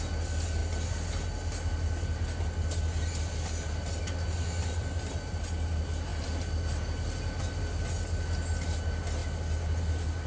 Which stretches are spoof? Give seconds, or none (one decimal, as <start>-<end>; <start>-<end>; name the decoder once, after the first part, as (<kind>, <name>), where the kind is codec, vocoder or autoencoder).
none